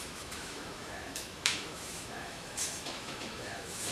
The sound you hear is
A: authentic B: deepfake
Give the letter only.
B